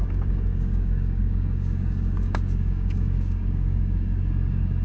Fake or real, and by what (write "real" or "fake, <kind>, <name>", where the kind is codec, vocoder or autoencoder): fake, codec, DAC